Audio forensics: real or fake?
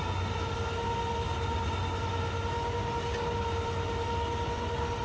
real